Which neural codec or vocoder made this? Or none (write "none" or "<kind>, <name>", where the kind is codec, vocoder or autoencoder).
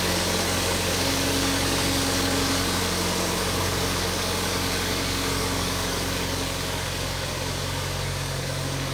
codec, DAC